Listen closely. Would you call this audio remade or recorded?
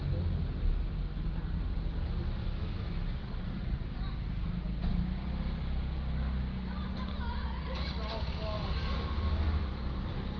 recorded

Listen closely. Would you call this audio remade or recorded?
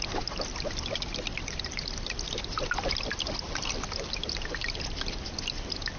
recorded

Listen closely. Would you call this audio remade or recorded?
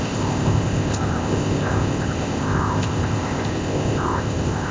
remade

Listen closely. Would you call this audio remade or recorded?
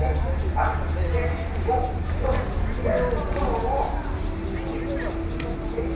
recorded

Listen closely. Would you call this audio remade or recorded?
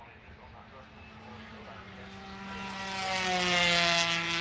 recorded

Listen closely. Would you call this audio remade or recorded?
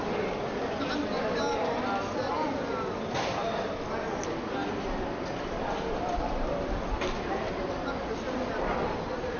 recorded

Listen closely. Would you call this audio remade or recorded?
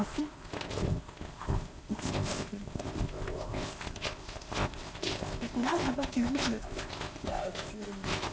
remade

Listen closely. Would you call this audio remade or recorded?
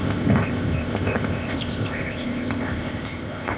remade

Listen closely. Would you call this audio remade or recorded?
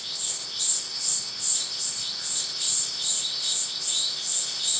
remade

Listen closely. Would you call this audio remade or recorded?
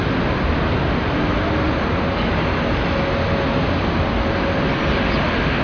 recorded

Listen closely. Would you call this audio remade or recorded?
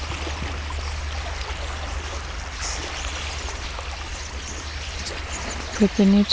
recorded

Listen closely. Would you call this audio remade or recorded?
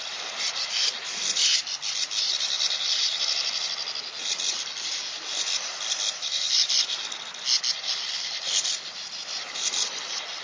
recorded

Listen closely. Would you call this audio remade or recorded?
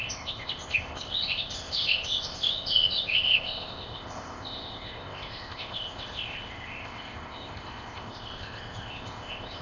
remade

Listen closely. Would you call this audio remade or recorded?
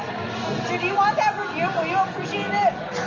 recorded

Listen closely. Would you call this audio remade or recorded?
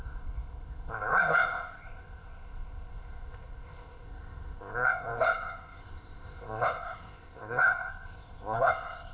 remade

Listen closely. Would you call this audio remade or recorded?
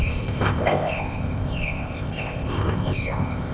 remade